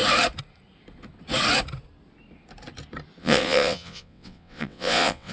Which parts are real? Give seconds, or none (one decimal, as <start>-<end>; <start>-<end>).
0.0-3.2